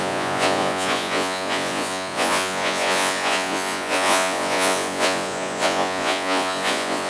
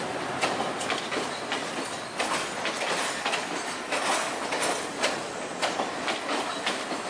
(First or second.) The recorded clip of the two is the second